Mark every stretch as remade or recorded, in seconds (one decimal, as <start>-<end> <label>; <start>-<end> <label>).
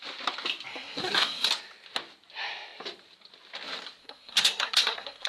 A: 0.0-0.7 recorded; 0.7-1.5 remade; 1.5-4.0 recorded; 4.0-5.3 remade